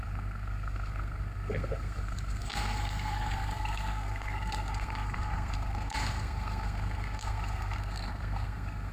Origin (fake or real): fake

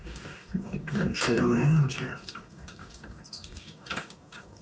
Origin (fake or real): fake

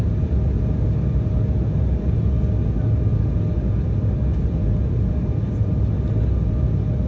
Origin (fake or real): real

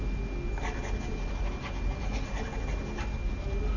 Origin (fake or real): real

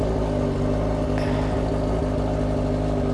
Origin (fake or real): real